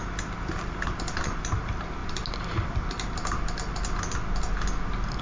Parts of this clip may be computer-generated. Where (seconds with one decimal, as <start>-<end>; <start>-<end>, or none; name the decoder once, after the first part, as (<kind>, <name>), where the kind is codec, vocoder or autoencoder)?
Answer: none